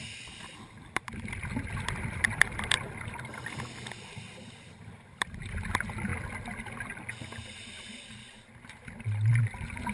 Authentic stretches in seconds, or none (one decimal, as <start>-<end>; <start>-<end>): 0.0-9.9